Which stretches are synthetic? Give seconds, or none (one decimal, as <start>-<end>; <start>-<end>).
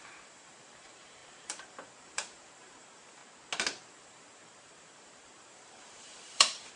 0.0-3.2; 3.9-6.8